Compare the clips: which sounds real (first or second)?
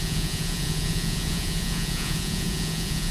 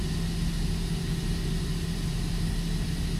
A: second